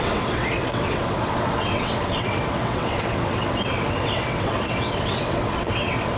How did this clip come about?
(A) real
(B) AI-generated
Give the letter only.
B